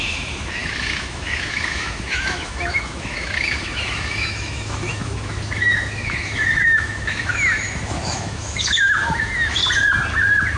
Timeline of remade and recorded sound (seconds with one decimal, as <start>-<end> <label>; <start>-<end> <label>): 0.0-9.6 remade; 9.6-10.6 recorded